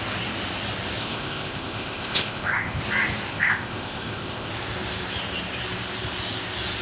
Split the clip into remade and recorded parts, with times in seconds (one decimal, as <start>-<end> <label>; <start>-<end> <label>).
0.0-1.0 recorded; 1.0-2.8 remade; 2.8-3.3 recorded; 3.3-4.5 remade; 4.5-6.8 recorded